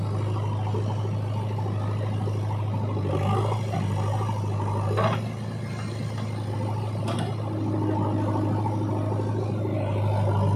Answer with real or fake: real